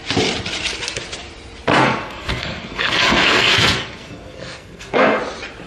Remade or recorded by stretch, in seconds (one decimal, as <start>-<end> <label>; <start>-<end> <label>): 0.0-1.8 recorded; 1.8-5.2 remade; 5.2-5.7 recorded